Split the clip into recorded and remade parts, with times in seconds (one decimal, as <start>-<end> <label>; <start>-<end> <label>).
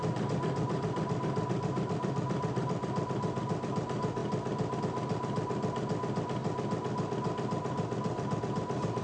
0.0-9.0 recorded